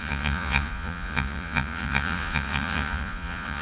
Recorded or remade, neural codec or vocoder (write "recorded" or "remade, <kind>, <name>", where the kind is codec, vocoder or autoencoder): remade, vocoder, Vocos